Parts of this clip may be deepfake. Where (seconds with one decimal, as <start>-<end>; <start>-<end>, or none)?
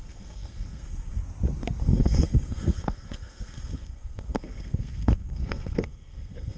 0.0-1.2; 1.8-6.6